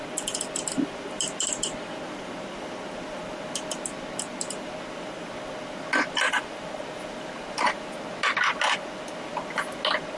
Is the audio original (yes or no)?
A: yes